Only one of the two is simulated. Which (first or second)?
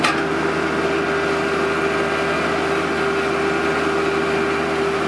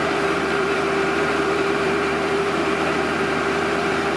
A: second